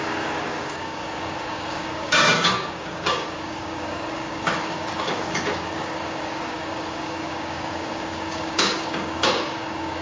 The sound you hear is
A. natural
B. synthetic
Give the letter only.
B